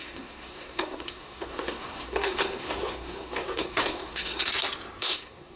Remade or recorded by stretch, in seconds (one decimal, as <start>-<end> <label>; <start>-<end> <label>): 0.0-4.5 remade; 4.5-5.0 recorded; 5.0-5.6 remade